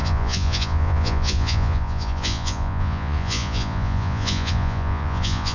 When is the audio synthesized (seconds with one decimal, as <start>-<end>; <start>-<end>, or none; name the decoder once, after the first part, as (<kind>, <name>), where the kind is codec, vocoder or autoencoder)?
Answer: 0.0-5.5 (vocoder, Vocos)